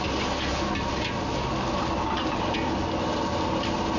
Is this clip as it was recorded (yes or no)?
yes